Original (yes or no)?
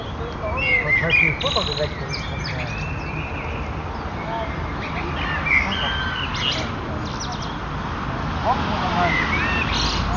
yes